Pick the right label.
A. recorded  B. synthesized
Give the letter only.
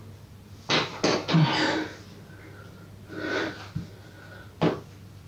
A